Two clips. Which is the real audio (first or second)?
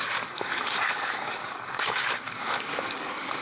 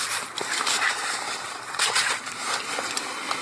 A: second